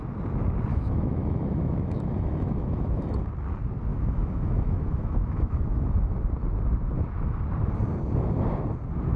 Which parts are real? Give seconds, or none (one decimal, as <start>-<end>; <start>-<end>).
0.0-0.7; 3.3-3.9; 6.1-9.2